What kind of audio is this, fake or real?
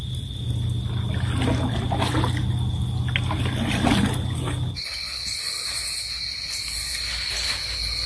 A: real